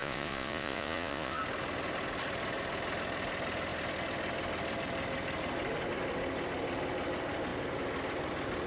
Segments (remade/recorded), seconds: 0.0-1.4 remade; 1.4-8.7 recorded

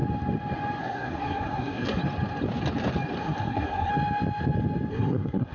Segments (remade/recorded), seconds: 0.0-0.8 recorded; 0.8-2.0 remade; 2.0-3.2 recorded; 3.2-3.9 remade; 3.9-4.9 recorded; 4.9-5.5 remade

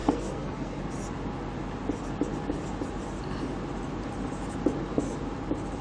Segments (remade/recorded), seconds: 0.0-0.8 remade; 0.8-5.8 recorded

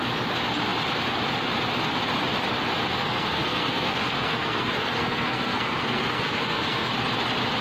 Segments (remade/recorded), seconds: 0.0-2.9 recorded; 2.9-6.9 remade; 6.9-7.6 recorded

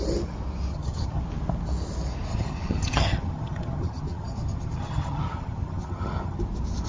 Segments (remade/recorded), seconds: 0.0-0.7 recorded; 0.7-1.2 remade; 1.2-2.3 recorded; 2.3-6.4 remade; 6.4-6.9 recorded

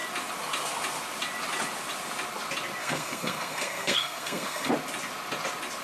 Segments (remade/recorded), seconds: 0.0-2.8 recorded; 2.8-4.7 remade; 4.7-5.8 recorded